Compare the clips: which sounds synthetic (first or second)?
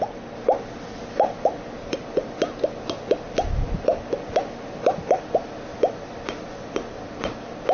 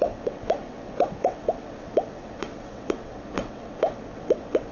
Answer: second